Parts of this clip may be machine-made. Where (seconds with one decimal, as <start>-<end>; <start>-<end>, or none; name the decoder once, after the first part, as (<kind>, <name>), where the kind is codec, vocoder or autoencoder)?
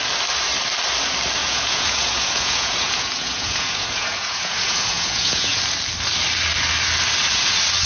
1.4-5.6 (vocoder, Vocos)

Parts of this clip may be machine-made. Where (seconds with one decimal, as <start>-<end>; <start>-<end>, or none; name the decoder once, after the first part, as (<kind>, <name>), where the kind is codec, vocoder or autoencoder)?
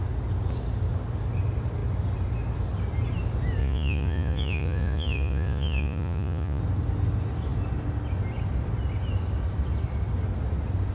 3.6-6.6 (vocoder, Vocos)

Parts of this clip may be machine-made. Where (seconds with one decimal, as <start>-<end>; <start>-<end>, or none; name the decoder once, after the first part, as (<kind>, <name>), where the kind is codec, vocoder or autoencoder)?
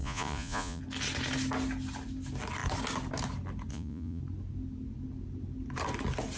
0.0-0.8 (vocoder, Vocos); 3.7-4.2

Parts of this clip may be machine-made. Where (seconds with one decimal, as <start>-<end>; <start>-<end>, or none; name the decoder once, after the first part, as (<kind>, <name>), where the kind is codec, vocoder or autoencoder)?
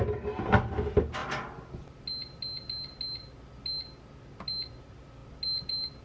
none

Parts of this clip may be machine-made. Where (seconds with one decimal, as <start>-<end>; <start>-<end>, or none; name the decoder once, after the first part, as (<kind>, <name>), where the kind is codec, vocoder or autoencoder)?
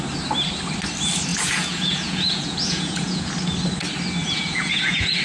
1.3-3.3 (vocoder, Vocos); 4.2-5.2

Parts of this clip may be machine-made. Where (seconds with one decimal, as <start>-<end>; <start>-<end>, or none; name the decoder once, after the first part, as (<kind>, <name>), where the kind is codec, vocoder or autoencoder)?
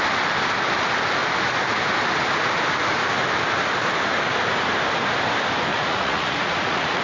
5.7-7.0 (vocoder, Vocos)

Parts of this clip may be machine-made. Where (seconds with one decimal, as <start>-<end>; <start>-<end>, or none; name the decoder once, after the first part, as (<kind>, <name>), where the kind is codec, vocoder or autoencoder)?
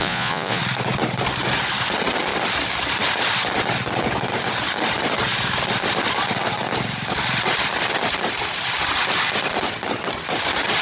0.0-0.6 (vocoder, Vocos)